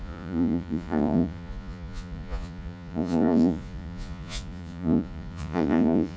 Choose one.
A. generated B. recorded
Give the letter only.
A